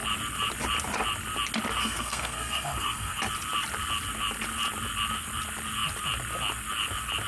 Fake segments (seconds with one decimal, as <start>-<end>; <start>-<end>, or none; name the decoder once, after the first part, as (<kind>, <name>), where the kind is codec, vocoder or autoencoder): 1.8-3.2 (codec, SNAC)